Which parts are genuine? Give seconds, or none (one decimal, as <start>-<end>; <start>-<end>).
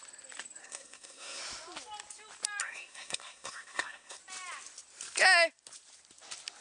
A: 0.0-0.6; 1.4-2.6; 4.2-6.6